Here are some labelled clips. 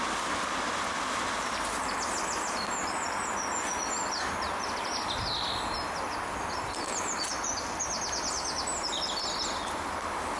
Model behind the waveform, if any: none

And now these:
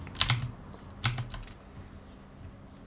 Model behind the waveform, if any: none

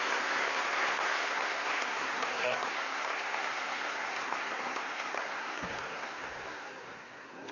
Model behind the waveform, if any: codec, SNAC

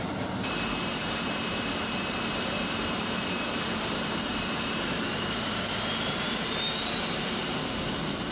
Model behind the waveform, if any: vocoder, BigVGAN v2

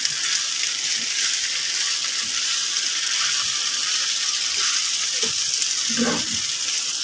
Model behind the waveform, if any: none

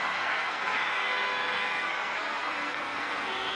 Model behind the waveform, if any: codec, SNAC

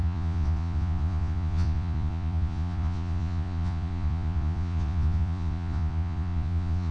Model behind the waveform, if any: vocoder, Vocos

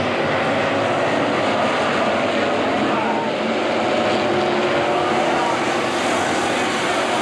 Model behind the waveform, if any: none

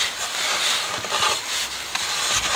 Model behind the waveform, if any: none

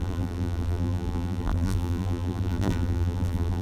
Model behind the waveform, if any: vocoder, BigVGAN v2